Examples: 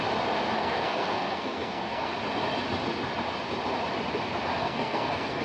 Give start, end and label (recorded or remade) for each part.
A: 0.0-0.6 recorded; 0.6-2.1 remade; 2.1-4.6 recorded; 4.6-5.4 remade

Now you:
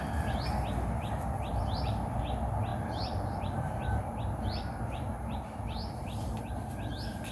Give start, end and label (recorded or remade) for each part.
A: 0.0-1.5 recorded; 1.5-2.2 remade; 2.2-2.7 recorded; 2.7-6.5 remade; 6.5-7.3 recorded

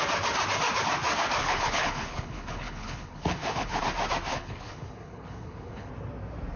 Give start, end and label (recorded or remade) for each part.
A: 0.0-1.4 recorded; 1.4-3.8 remade; 3.8-4.3 recorded; 4.3-5.9 remade; 5.9-6.6 recorded

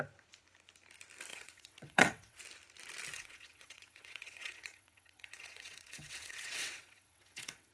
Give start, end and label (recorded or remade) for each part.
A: 0.0-1.3 recorded; 1.3-2.4 remade; 2.4-3.1 recorded; 3.1-7.7 remade